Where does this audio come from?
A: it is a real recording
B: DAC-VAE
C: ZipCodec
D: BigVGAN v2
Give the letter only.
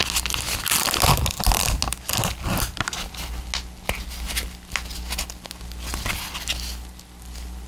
A